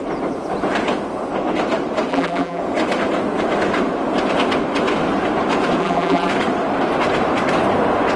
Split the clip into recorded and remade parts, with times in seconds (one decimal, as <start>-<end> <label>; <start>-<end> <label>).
0.0-2.1 recorded; 2.1-2.6 remade; 2.6-5.8 recorded; 5.8-6.3 remade; 6.3-8.2 recorded